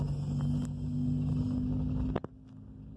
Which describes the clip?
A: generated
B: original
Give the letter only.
B